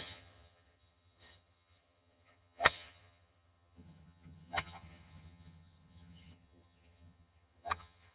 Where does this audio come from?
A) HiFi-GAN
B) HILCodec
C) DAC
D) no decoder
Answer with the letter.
A